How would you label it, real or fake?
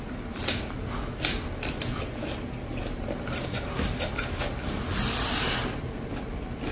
real